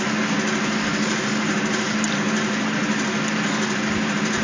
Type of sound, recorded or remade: recorded